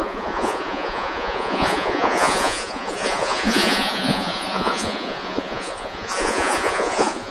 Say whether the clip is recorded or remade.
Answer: remade